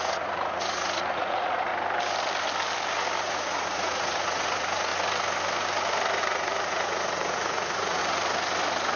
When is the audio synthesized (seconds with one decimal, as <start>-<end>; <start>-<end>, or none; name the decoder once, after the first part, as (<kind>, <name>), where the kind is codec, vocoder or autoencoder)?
0.0-1.7 (vocoder, Vocos); 3.2-4.9; 6.2-8.0